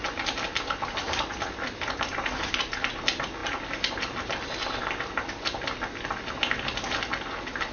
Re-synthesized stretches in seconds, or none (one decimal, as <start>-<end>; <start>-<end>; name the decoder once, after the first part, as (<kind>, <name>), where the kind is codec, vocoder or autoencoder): none